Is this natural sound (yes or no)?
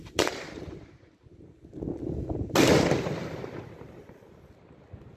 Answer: yes